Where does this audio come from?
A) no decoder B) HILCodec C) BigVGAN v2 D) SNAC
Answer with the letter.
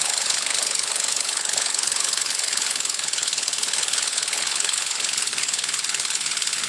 B